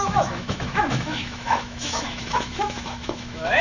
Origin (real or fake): fake